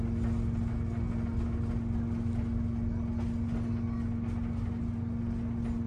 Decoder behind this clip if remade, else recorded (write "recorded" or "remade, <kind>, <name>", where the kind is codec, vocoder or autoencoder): recorded